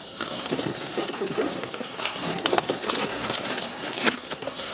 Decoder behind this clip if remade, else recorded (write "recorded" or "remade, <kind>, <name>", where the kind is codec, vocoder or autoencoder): remade, codec, SNAC